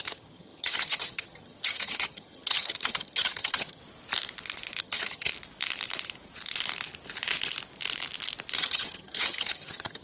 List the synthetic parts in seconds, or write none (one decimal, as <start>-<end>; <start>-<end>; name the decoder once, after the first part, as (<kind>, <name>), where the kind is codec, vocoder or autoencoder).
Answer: 0.0-3.8 (vocoder, HiFi-GAN); 4.8-5.3; 8.6-10.0